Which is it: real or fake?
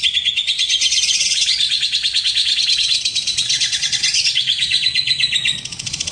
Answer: fake